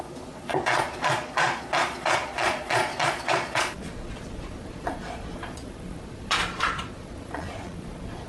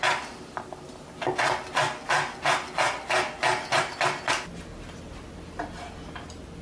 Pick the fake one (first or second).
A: first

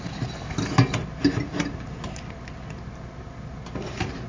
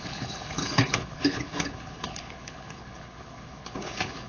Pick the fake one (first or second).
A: second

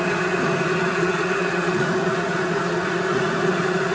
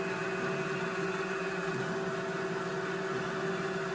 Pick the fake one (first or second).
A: first